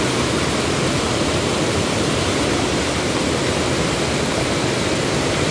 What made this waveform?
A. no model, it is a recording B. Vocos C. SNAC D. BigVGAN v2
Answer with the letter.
A